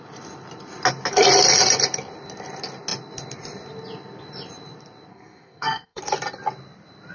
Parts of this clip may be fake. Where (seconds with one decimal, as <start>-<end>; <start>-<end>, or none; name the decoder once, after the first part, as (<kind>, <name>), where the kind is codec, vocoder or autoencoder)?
5.1-6.0 (codec, SNAC)